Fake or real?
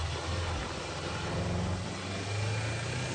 real